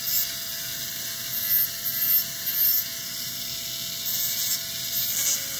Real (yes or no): yes